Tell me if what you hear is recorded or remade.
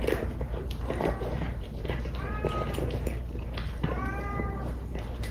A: remade